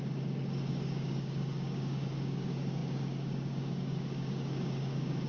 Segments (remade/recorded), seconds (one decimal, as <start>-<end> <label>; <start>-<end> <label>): 0.0-5.3 remade